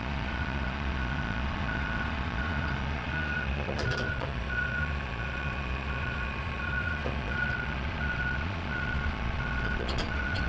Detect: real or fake fake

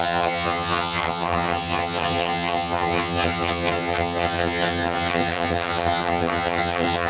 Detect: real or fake fake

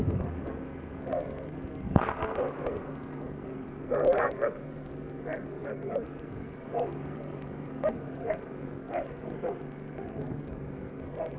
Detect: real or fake fake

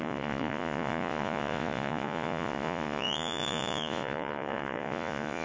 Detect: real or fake fake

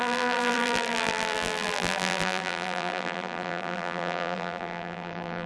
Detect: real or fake fake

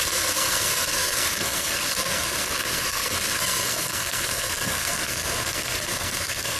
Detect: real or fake fake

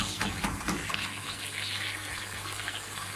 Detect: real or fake fake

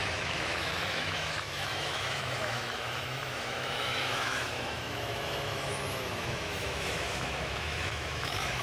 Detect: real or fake fake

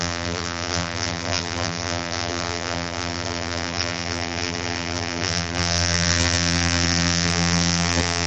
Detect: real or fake fake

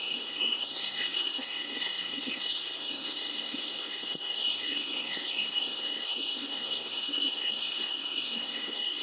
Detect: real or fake fake